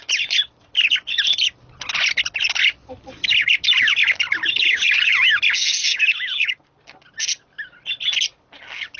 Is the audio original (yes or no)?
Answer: yes